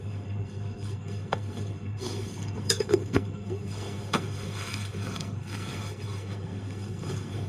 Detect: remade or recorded remade